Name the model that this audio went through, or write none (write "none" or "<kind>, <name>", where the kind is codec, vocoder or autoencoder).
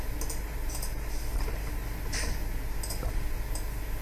none